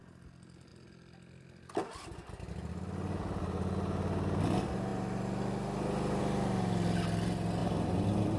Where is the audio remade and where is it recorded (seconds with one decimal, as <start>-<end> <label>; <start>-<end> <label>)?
0.0-7.6 recorded; 7.6-8.4 remade